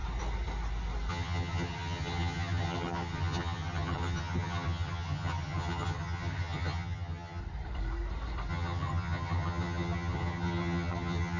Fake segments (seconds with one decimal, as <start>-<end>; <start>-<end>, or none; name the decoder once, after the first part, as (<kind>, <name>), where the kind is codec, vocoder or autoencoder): 1.1-7.4 (vocoder, HiFi-GAN); 8.5-11.4